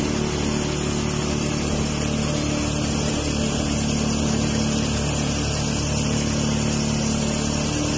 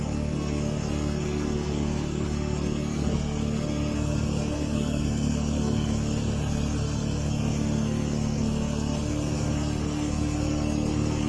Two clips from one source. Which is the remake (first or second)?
second